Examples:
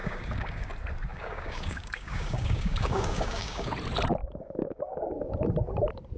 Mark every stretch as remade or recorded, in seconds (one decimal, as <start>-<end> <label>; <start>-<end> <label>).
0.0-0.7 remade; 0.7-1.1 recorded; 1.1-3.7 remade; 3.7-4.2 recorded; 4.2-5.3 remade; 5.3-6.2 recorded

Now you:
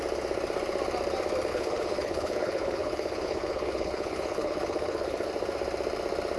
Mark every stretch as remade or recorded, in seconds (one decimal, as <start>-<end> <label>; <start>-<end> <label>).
0.0-1.5 recorded; 1.5-5.3 remade; 5.3-6.4 recorded

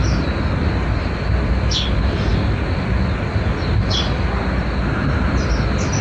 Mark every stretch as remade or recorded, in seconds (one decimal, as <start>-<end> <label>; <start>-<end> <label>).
0.0-6.0 recorded

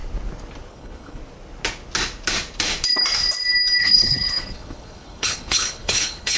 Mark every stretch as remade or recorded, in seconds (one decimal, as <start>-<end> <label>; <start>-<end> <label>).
0.0-0.7 recorded; 0.7-1.2 remade; 1.2-3.8 recorded; 3.8-6.4 remade

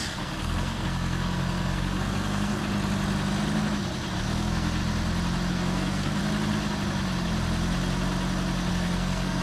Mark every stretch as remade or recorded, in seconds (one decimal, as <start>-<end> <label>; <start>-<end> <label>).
0.0-2.6 remade; 2.6-4.1 recorded; 4.1-4.8 remade; 4.8-5.5 recorded; 5.5-6.2 remade; 6.2-8.7 recorded; 8.7-9.4 remade

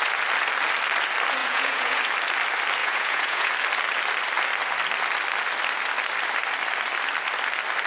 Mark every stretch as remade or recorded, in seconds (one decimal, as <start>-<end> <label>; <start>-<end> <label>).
0.0-1.4 recorded; 1.4-2.0 remade; 2.0-2.8 recorded; 2.8-3.5 remade; 3.5-7.9 recorded